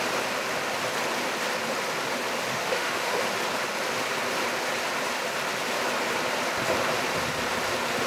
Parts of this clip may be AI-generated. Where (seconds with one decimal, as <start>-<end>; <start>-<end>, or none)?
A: 2.5-3.2